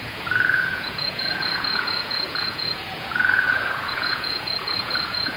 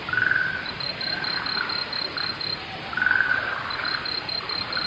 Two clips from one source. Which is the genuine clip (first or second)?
second